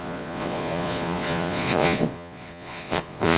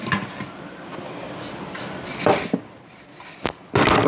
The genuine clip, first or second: second